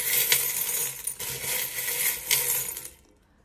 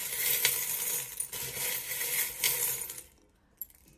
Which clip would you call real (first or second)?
first